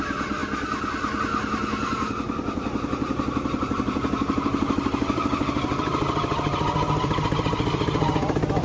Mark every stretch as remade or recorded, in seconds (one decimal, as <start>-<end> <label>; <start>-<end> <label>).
0.0-0.4 remade; 0.4-2.1 recorded; 2.1-8.6 remade